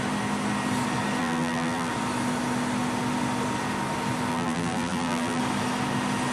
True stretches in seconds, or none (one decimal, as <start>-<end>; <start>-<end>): 0.0-1.2; 1.9-4.3; 5.4-6.3